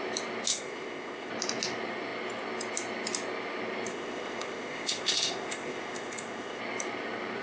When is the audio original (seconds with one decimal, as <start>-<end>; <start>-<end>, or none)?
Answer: 0.0-0.5; 1.3-3.9; 6.6-7.4